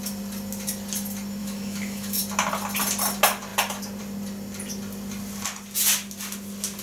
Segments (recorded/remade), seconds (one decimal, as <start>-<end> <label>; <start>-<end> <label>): 0.0-1.4 recorded; 1.4-2.2 remade; 2.2-6.8 recorded